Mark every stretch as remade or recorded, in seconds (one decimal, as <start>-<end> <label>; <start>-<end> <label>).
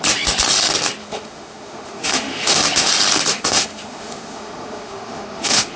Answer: 0.0-1.0 recorded; 1.0-2.9 remade; 2.9-3.3 recorded; 3.3-5.8 remade